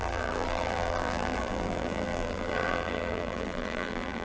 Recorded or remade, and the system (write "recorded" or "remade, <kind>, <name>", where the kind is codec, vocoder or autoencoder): remade, vocoder, BigVGAN v2